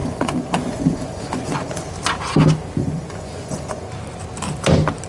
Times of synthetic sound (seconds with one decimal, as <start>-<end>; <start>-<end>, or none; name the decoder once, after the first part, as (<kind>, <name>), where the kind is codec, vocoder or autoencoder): 0.0-1.9 (vocoder, Vocos); 2.8-3.9